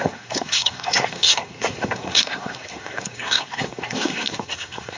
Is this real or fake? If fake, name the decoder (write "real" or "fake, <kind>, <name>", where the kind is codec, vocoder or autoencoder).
fake, codec, SNAC